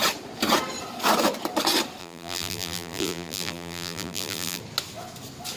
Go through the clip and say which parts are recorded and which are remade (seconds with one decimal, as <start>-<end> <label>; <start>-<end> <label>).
0.0-2.0 recorded; 2.0-4.6 remade; 4.6-5.6 recorded